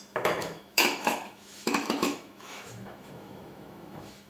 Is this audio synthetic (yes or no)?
yes